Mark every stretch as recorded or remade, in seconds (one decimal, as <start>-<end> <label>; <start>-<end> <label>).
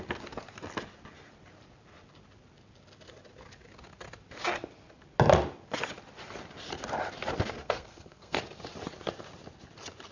0.0-7.6 recorded; 7.6-8.4 remade; 8.4-10.1 recorded